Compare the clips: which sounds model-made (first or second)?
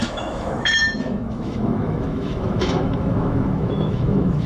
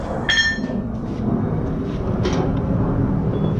first